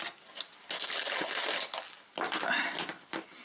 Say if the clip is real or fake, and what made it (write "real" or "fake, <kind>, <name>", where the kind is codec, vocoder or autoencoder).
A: real